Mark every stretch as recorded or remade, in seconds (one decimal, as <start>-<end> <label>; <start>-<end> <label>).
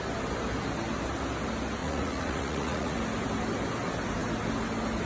0.0-1.8 recorded; 1.8-3.0 remade; 3.0-5.1 recorded